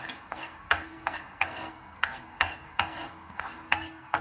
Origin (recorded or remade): remade